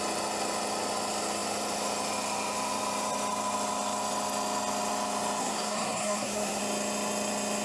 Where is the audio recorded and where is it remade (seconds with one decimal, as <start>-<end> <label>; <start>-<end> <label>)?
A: 0.0-5.4 recorded; 5.4-6.6 remade; 6.6-7.6 recorded